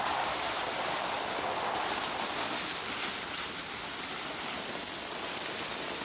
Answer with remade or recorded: recorded